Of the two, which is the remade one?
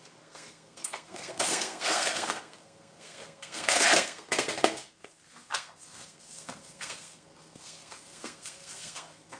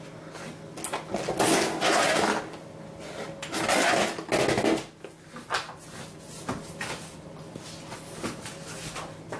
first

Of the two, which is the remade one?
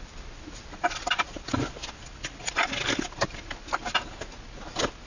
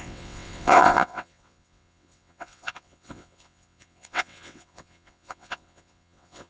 second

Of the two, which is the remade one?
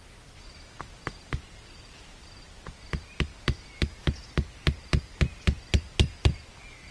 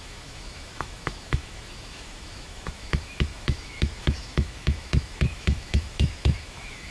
second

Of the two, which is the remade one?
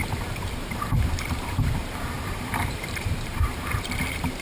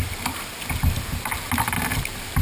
first